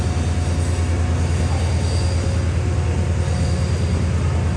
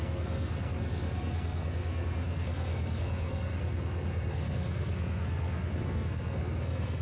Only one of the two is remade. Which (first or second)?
second